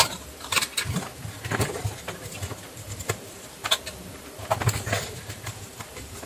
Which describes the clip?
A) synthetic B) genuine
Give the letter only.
A